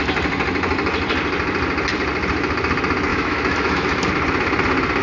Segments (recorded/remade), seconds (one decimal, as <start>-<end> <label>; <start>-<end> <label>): 0.0-3.1 recorded; 3.1-4.1 remade; 4.1-5.0 recorded